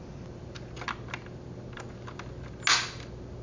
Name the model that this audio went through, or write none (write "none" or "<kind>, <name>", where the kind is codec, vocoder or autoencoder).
none